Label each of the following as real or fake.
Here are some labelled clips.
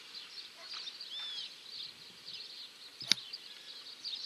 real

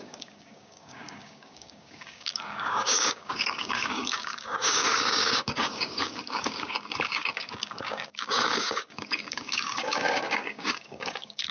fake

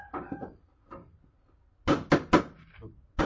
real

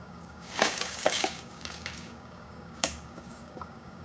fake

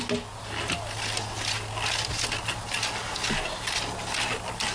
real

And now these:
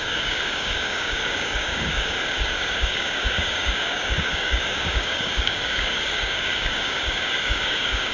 fake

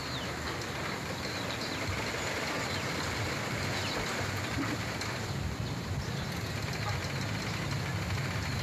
real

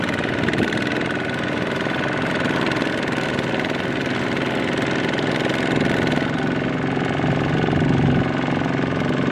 real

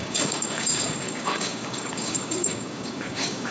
fake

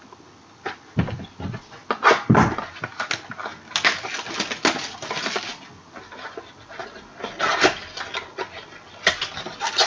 real